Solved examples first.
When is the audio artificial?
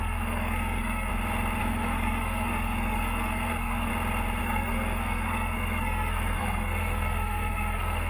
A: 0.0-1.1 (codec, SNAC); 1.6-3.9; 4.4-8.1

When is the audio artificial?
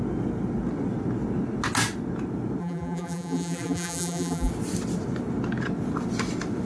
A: 2.6-4.5 (vocoder, BigVGAN v2)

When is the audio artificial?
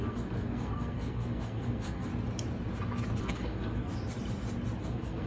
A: 0.0-2.1 (codec, SNAC); 3.2-3.9; 4.8-5.3